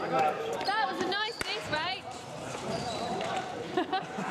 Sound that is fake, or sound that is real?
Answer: fake